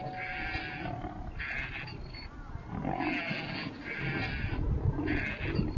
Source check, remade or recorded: recorded